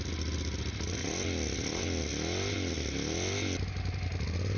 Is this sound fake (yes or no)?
no